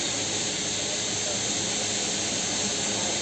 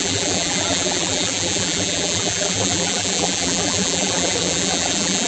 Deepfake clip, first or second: second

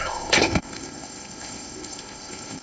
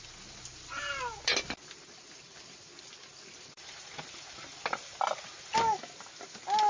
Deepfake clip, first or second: first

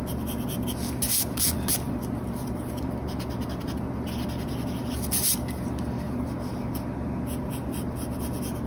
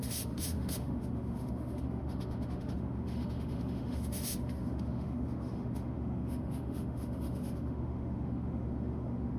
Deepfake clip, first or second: second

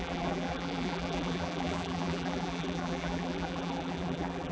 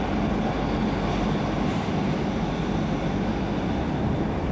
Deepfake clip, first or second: first